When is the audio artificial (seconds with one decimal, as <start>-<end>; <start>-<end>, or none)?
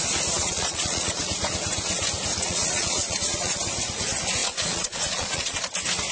0.4-1.2; 2.4-3.6; 4.4-5.6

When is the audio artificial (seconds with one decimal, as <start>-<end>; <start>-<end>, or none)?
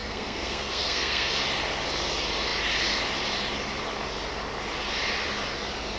0.0-1.3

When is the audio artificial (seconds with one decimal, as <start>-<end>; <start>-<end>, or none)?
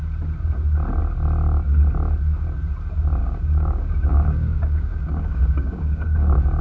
3.2-6.6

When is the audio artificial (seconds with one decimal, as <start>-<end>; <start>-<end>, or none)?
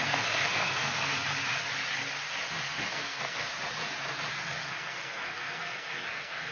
0.0-1.1; 2.9-3.5; 4.3-6.5